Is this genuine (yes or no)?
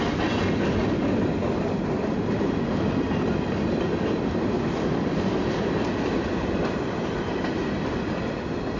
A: no